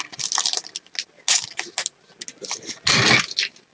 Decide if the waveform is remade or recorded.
recorded